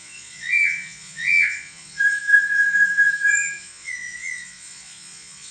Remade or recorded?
remade